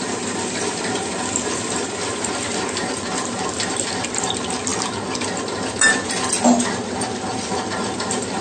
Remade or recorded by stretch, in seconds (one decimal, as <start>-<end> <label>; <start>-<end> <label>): 0.0-8.4 recorded